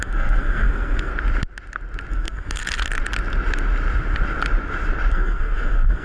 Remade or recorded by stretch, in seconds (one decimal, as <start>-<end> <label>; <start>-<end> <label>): 0.0-1.1 remade; 1.1-2.1 recorded; 2.1-2.6 remade; 2.6-5.1 recorded; 5.1-6.0 remade